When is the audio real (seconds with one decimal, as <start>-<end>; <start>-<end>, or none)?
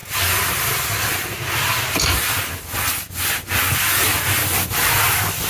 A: 0.0-5.5